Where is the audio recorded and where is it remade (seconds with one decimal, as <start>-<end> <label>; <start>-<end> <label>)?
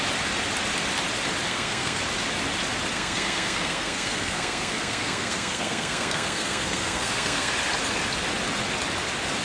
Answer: 0.0-1.5 recorded; 1.5-2.0 remade; 2.0-2.9 recorded; 2.9-7.5 remade; 7.5-9.4 recorded